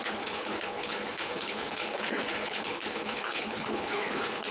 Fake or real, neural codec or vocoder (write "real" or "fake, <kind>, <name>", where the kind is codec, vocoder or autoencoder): fake, codec, HILCodec